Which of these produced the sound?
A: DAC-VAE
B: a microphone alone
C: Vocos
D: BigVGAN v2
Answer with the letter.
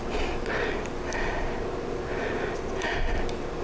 B